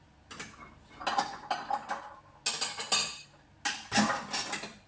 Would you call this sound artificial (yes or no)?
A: no